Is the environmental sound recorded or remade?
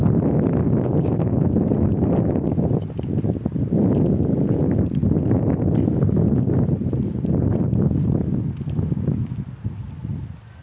recorded